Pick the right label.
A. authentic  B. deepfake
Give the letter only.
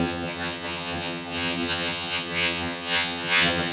B